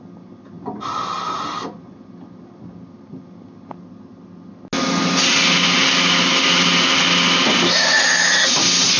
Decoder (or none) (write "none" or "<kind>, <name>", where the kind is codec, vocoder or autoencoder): none